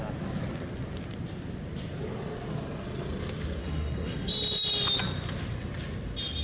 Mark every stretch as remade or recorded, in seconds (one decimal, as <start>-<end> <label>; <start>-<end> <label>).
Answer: 0.0-3.6 recorded; 3.6-4.3 remade; 4.3-6.4 recorded